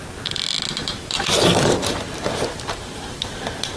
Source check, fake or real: fake